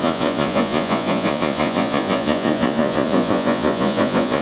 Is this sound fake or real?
fake